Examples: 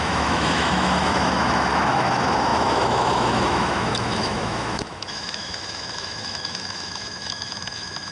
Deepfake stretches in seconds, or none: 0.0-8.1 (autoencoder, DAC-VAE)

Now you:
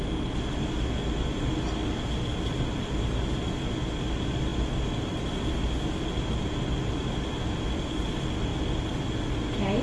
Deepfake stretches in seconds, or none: none